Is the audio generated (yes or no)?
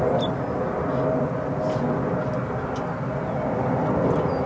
no